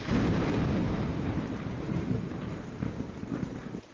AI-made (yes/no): yes